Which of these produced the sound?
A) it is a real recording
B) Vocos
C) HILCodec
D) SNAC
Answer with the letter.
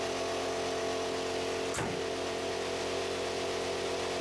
A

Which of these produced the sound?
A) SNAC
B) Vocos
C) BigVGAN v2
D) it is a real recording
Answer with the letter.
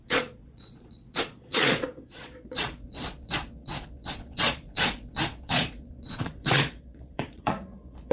B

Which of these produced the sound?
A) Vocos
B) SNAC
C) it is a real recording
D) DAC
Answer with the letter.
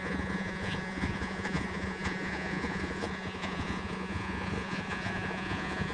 A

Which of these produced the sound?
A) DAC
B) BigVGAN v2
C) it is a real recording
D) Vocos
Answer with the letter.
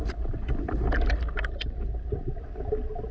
C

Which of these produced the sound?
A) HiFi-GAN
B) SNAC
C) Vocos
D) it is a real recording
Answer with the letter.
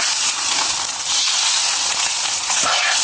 C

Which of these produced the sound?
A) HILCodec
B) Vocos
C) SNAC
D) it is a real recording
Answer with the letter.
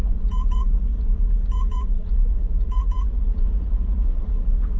B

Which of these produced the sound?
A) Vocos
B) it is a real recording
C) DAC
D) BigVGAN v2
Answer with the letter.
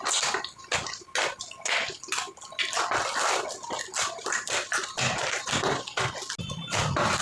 B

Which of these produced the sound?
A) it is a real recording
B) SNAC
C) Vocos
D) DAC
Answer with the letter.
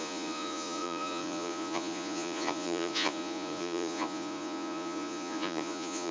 C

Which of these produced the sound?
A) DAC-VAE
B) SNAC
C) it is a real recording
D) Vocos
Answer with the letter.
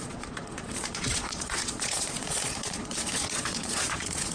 D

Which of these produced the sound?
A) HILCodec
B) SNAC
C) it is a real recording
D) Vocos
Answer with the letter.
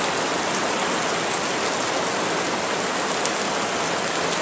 C